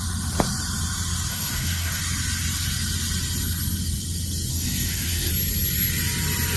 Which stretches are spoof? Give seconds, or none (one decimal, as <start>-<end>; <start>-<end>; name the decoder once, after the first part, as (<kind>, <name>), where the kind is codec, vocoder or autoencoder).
1.3-2.0 (codec, SNAC); 4.5-5.3

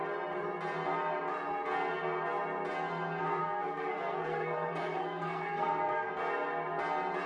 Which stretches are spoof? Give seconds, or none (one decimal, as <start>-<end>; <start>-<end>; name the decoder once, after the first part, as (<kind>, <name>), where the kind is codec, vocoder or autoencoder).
3.4-6.1 (codec, SNAC)

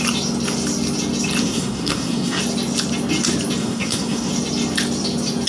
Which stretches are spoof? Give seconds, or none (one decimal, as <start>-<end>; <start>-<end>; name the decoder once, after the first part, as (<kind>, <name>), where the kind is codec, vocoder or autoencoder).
1.4-2.4 (codec, SNAC); 3.6-4.3

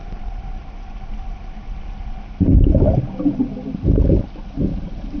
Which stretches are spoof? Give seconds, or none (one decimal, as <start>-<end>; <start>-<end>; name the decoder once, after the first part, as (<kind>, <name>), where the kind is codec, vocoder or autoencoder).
none

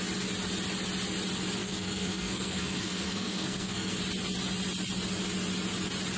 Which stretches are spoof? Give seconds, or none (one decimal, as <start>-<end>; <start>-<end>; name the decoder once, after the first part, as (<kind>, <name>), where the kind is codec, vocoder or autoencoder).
1.6-4.0 (codec, SNAC)

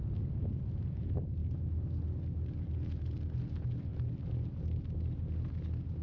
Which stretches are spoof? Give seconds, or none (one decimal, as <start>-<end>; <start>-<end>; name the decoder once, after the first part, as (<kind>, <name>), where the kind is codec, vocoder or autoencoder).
none

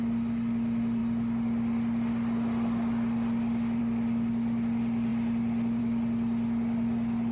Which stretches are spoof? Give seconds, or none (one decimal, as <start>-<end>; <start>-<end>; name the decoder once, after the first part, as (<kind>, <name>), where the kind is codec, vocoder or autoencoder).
none